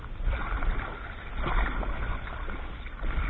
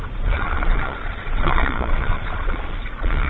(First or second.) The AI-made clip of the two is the second